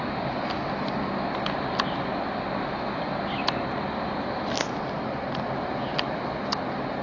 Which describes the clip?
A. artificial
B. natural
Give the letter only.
B